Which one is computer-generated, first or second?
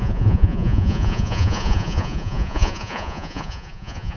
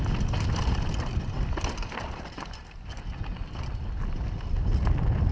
first